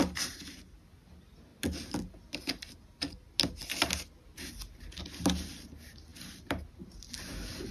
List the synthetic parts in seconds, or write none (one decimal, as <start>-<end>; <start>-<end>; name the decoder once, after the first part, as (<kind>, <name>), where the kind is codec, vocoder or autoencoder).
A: none